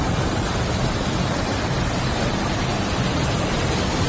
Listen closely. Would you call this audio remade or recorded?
recorded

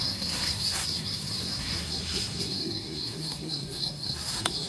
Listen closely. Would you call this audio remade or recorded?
remade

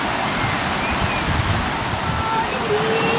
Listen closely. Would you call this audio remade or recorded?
recorded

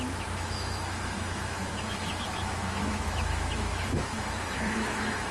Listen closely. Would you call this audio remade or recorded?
remade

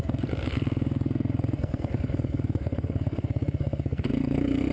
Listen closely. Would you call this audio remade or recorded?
remade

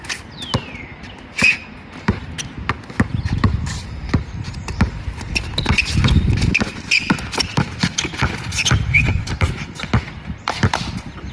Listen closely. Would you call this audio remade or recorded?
recorded